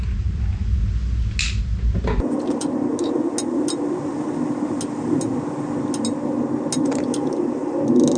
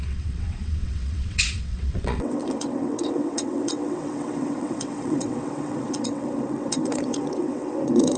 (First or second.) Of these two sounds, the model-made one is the second